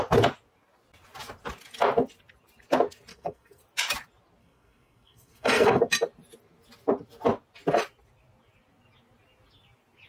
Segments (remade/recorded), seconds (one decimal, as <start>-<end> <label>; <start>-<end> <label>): 0.0-3.1 recorded; 3.1-3.6 remade; 3.6-4.4 recorded; 4.4-5.8 remade; 5.8-10.1 recorded